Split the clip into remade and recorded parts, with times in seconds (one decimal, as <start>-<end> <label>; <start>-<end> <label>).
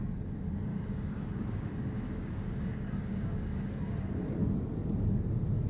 0.0-0.7 recorded; 0.7-3.8 remade; 3.8-5.7 recorded